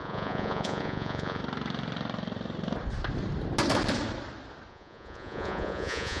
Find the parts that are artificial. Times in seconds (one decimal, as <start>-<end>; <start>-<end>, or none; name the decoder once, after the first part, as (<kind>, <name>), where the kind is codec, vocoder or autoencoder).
0.0-1.4 (vocoder, Vocos); 4.7-6.2